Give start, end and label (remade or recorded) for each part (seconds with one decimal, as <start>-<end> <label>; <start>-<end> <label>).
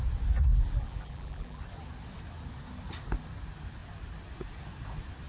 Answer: 0.0-0.5 recorded; 0.5-1.6 remade; 1.6-5.3 recorded